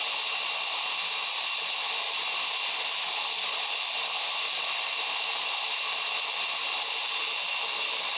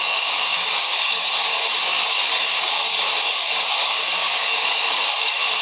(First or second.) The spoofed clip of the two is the second